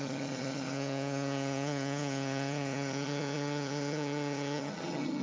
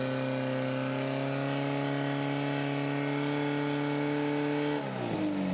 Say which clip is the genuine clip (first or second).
second